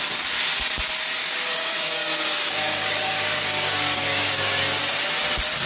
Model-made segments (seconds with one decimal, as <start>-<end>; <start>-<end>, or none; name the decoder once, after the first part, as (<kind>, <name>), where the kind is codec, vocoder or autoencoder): 1.2-4.6 (codec, DAC)